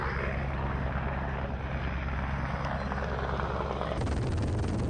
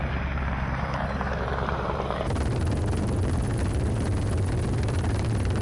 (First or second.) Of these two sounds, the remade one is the second